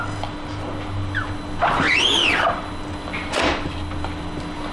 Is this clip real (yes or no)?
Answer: yes